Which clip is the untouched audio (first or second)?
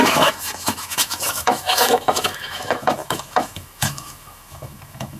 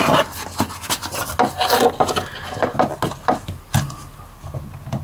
second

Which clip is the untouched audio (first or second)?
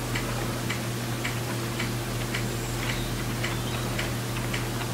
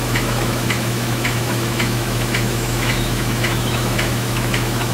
first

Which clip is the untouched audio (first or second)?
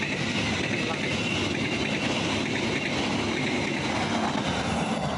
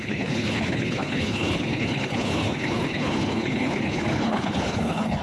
first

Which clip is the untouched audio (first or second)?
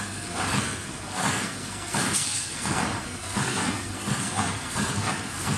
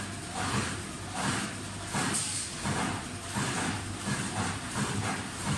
second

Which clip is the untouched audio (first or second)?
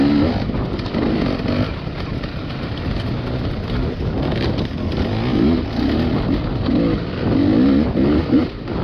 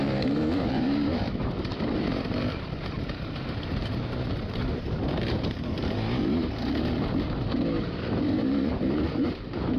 first